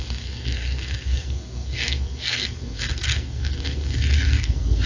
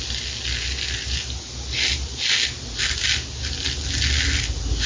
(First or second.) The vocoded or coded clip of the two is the first